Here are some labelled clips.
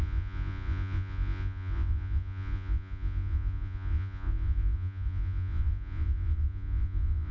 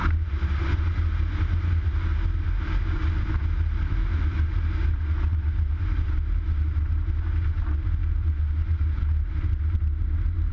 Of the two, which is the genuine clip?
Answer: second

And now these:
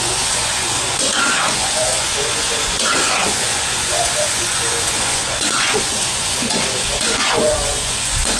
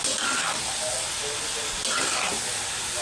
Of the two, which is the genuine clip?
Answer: second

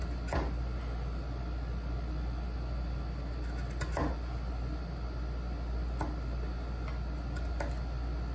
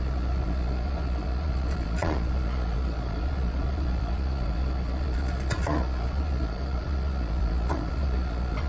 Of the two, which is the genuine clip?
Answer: first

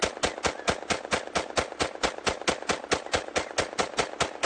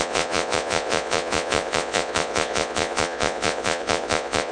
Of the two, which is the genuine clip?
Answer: first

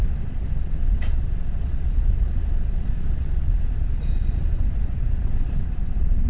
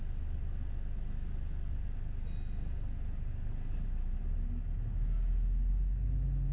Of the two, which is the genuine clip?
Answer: second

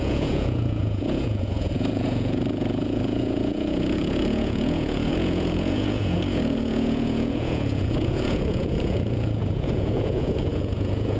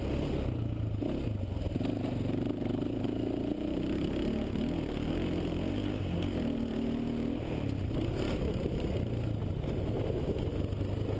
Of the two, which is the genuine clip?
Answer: second